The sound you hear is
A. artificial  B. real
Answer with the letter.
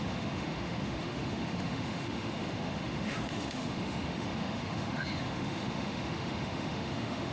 A